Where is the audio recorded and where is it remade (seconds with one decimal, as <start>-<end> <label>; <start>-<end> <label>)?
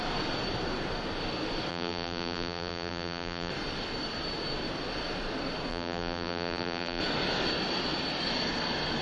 0.0-1.7 recorded; 1.7-3.5 remade; 3.5-5.7 recorded; 5.7-7.0 remade; 7.0-9.0 recorded